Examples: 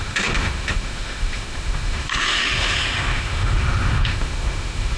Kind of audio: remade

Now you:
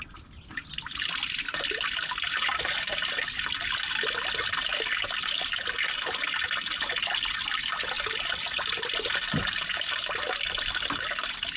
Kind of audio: recorded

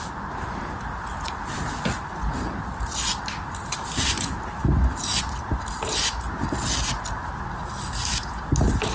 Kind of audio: recorded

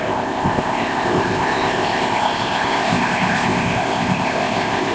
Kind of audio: remade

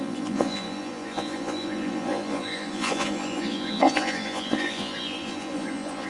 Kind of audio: remade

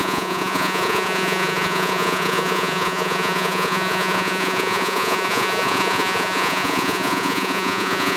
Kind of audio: remade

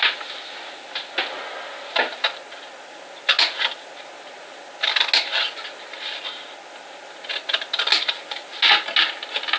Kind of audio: recorded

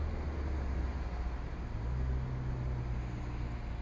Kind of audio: recorded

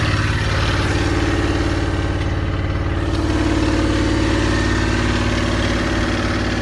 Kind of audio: recorded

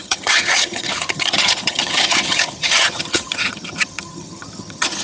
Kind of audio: remade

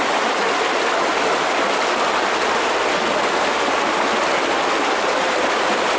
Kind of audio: recorded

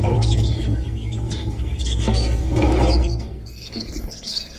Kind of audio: remade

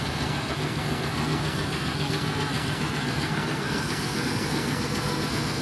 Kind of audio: remade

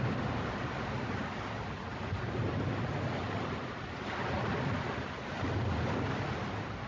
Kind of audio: recorded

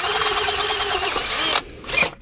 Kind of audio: recorded